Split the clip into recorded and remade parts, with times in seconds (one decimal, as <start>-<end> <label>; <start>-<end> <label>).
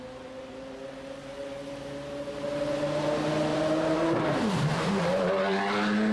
0.0-3.5 recorded; 3.5-5.4 remade; 5.4-6.1 recorded